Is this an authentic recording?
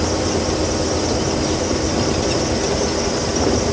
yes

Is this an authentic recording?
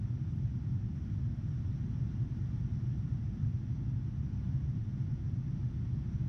yes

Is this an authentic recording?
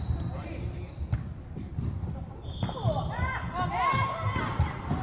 yes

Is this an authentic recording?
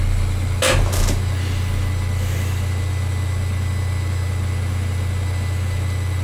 yes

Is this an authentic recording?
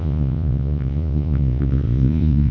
no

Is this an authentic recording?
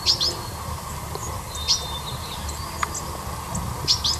yes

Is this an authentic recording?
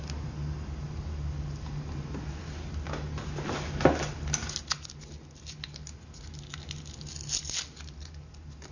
yes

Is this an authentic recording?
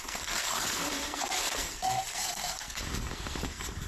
no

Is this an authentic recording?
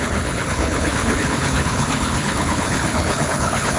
no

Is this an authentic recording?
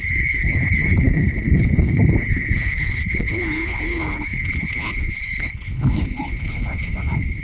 no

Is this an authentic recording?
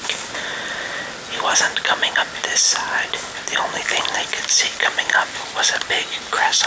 yes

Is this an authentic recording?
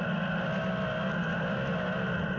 yes